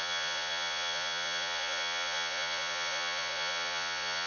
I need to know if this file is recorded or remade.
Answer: remade